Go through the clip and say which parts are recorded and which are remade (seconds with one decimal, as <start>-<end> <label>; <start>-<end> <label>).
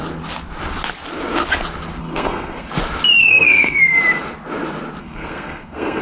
0.0-2.0 recorded; 2.0-2.7 remade; 2.7-3.2 recorded; 3.2-4.0 remade; 4.0-5.0 recorded; 5.0-6.0 remade